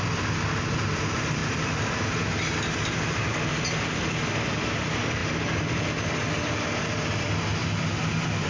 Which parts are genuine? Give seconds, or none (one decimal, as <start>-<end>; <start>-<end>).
0.0-8.5